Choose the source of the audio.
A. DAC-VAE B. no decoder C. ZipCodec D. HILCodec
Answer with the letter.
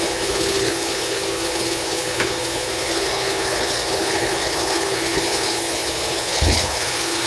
D